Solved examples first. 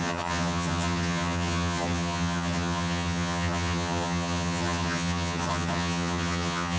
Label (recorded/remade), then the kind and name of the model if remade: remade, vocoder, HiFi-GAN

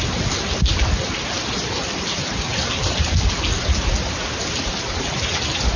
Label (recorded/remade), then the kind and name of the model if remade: recorded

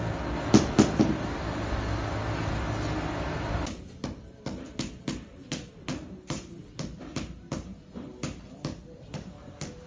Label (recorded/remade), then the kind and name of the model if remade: recorded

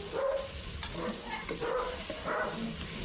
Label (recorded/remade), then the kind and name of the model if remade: recorded